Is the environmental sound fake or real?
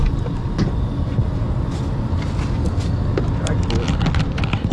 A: real